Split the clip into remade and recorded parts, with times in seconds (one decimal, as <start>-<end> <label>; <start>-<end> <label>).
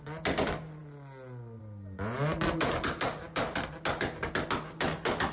0.0-5.3 recorded